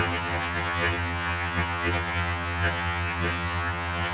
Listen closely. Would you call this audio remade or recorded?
remade